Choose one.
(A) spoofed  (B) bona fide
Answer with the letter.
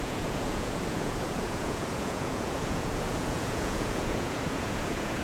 A